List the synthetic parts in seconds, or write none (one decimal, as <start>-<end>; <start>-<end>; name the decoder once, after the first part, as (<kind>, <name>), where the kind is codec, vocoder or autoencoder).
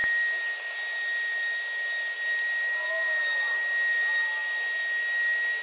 none